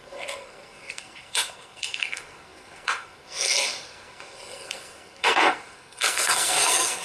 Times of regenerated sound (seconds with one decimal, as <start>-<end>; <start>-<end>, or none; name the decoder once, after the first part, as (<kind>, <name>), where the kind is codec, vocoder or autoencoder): 0.0-7.0 (codec, SNAC)